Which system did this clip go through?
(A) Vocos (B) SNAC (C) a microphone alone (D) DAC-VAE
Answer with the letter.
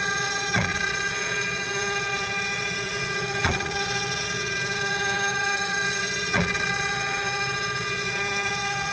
A